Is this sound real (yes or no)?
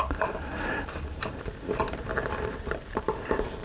no